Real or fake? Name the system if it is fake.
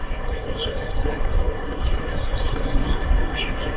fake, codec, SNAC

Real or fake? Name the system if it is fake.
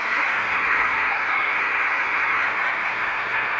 fake, codec, SNAC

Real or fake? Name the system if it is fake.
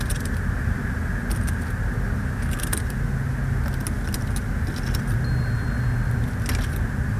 real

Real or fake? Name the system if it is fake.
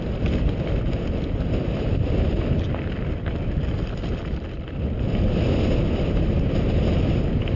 real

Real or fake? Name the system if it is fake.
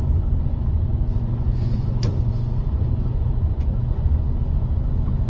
fake, vocoder, Vocos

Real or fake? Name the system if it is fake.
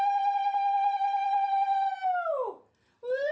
real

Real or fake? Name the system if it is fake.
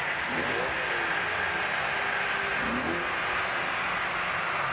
real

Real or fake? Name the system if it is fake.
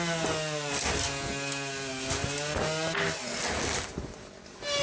real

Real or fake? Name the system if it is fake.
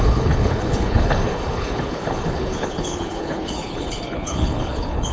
fake, codec, HILCodec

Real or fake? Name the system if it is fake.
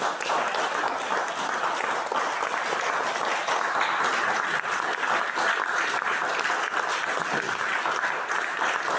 real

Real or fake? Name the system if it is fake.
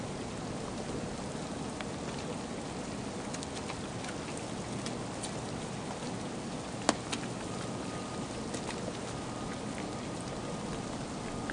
real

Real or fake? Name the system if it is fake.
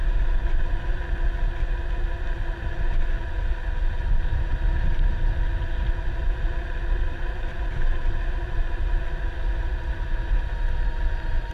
real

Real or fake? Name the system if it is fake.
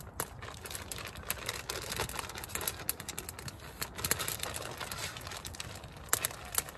real